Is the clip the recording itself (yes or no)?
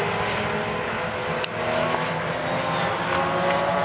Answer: yes